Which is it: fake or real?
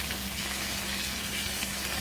fake